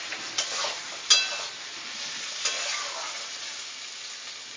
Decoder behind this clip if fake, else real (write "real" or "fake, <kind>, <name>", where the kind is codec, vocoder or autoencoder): real